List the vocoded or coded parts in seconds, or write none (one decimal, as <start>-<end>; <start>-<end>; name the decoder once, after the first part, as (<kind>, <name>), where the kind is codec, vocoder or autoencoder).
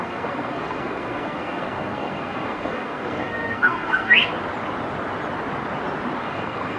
0.0-4.3 (codec, SNAC); 6.2-6.8